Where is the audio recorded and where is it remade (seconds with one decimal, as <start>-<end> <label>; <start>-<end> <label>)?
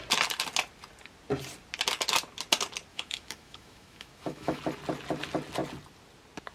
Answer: 0.0-2.9 recorded; 2.9-4.6 remade; 4.6-6.5 recorded